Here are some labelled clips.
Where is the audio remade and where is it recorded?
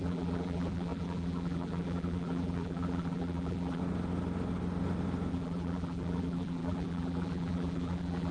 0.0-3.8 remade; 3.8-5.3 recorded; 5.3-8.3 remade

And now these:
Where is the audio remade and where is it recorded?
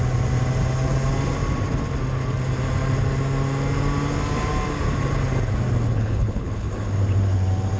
0.0-5.9 recorded; 5.9-6.7 remade; 6.7-7.8 recorded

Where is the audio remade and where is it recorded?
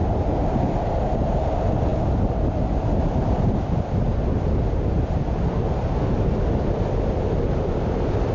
0.0-8.3 recorded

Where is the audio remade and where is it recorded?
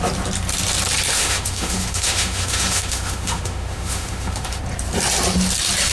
0.0-1.1 recorded; 1.1-4.6 remade; 4.6-5.9 recorded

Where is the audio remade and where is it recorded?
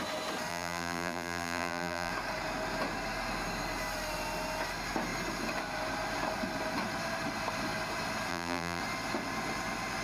0.0-0.5 recorded; 0.5-2.1 remade; 2.1-8.3 recorded; 8.3-8.8 remade; 8.8-10.0 recorded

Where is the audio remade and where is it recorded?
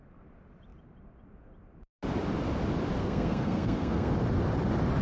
0.0-3.0 recorded; 3.0-4.1 remade; 4.1-5.0 recorded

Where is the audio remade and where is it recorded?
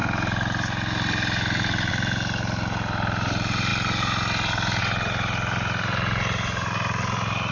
0.0-7.5 recorded